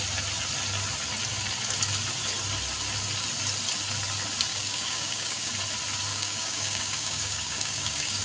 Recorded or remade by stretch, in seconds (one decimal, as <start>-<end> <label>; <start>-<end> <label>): 0.0-4.5 recorded; 4.5-5.5 remade; 5.5-6.1 recorded; 6.1-8.2 remade